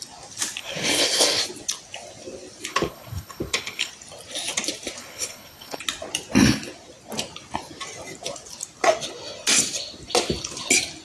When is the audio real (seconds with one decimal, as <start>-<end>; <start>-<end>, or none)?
0.0-0.6; 1.4-2.7; 3.9-5.0; 5.8-11.0

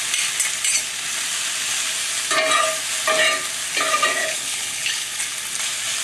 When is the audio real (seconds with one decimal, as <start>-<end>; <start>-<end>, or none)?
0.0-4.2; 5.2-6.0

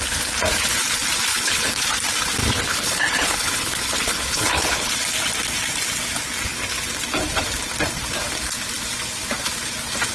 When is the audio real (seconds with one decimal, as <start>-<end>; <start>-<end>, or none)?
0.0-1.3; 1.8-2.4; 4.9-10.1

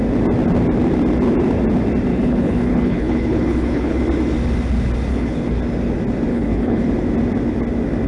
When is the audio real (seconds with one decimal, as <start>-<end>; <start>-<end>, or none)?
0.0-2.1; 4.0-5.1; 5.6-6.3; 6.9-8.1

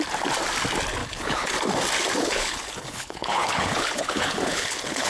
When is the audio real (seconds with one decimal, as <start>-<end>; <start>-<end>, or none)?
0.0-1.0; 1.5-2.2

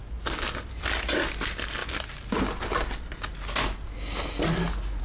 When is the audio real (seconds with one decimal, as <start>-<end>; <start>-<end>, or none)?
0.0-5.0

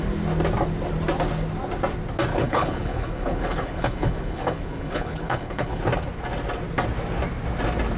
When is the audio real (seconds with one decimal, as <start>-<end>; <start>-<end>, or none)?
0.0-2.3; 5.8-8.0

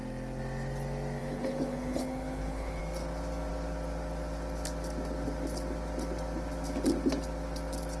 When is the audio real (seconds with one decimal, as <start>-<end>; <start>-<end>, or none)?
0.0-1.2; 2.8-8.0